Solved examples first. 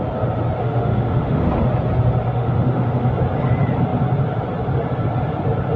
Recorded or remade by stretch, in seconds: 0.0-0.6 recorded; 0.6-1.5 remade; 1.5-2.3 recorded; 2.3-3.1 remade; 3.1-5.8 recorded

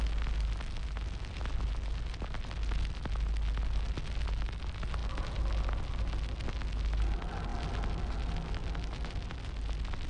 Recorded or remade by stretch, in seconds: 0.0-10.1 recorded

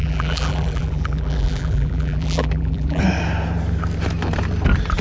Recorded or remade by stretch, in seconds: 0.0-3.0 remade; 3.0-5.0 recorded

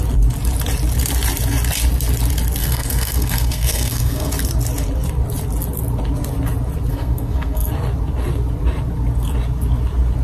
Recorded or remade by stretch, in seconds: 0.0-2.6 recorded; 2.6-4.3 remade; 4.3-6.9 recorded; 6.9-7.7 remade; 7.7-10.2 recorded